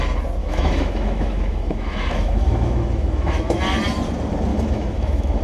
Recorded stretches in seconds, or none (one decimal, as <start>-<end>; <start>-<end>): 0.0-0.4; 3.6-4.5